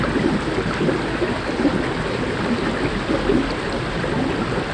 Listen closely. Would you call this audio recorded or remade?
recorded